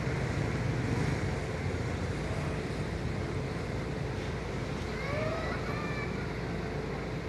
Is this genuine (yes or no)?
yes